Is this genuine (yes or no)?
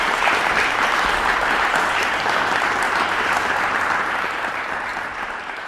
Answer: no